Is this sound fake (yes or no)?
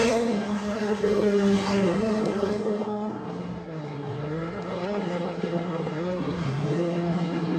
yes